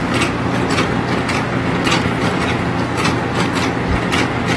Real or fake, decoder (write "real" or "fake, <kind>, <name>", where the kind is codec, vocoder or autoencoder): real